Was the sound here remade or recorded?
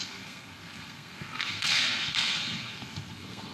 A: remade